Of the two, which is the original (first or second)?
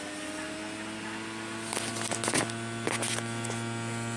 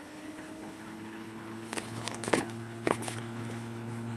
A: first